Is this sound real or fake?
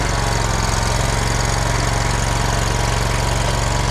real